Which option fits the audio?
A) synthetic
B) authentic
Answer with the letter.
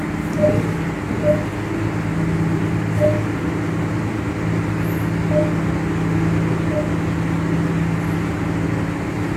B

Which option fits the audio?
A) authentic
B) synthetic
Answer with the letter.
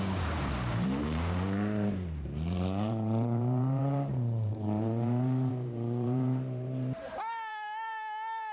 B